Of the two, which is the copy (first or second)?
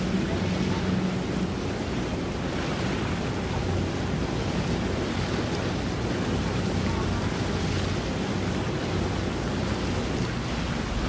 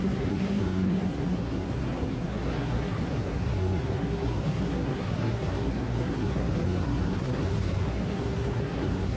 second